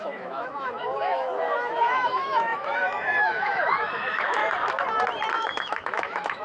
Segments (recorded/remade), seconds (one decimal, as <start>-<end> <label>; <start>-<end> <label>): 0.0-4.4 remade; 4.4-5.3 recorded; 5.3-6.4 remade